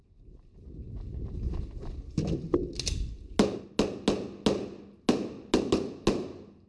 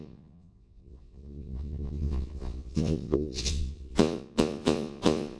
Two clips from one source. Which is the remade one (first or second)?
second